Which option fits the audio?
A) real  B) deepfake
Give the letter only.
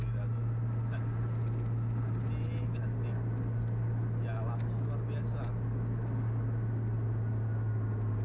A